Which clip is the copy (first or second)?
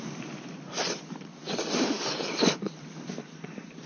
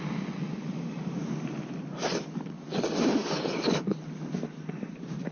first